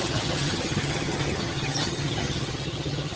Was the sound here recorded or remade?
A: remade